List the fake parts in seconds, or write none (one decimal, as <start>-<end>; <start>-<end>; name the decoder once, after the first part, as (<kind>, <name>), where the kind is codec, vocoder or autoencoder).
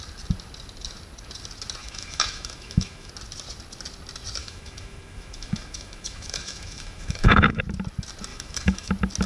1.8-3.1 (autoencoder, DAC-VAE); 4.4-7.6; 8.3-8.9